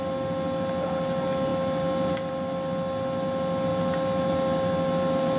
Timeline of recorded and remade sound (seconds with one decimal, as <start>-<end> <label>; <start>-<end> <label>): 0.0-5.4 recorded